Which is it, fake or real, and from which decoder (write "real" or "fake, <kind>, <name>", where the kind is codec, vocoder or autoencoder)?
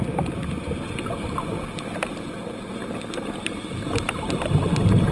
real